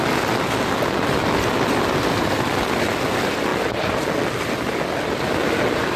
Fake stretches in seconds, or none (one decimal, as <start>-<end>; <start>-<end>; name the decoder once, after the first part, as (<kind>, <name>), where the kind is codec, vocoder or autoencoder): none